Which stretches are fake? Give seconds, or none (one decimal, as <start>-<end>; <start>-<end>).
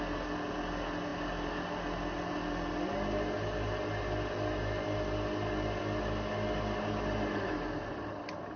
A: none